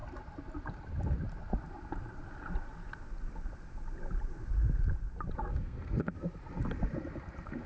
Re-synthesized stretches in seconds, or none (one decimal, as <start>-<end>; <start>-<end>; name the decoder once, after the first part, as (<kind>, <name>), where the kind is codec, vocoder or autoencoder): 5.4-6.1 (codec, SNAC)